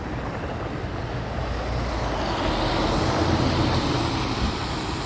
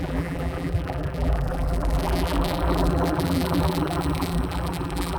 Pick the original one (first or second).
first